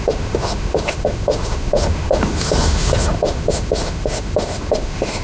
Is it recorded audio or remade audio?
remade